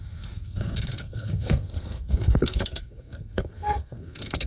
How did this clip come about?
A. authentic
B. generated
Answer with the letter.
B